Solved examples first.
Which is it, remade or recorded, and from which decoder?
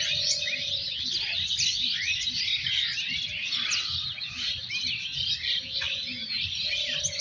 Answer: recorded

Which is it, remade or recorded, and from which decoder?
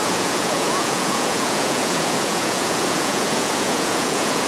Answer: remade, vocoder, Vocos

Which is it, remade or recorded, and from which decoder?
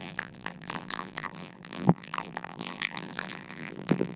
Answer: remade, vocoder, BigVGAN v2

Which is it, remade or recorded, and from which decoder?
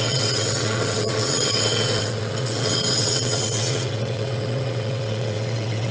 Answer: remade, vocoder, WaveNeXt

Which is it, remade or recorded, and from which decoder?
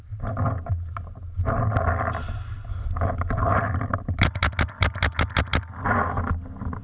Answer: recorded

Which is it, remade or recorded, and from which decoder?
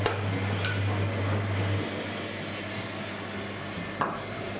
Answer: recorded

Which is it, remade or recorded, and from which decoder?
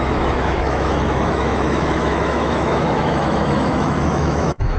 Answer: remade, autoencoder, DAC-VAE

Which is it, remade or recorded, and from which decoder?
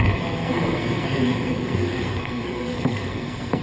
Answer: remade, codec, SNAC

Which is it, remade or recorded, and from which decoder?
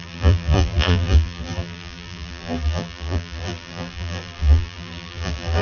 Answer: remade, vocoder, BigVGAN v2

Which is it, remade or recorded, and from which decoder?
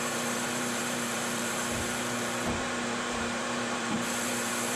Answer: remade, vocoder, BigVGAN v2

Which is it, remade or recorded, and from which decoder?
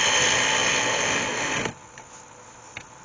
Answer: recorded